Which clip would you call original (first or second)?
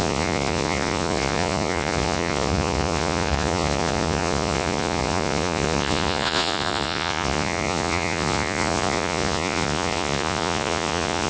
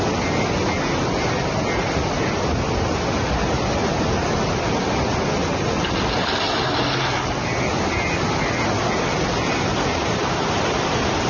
second